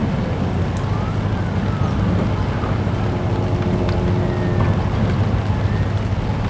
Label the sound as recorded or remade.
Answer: recorded